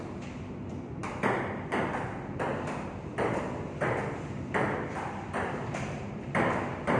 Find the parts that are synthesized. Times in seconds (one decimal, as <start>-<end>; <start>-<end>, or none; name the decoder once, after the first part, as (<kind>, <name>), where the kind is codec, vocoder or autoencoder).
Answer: none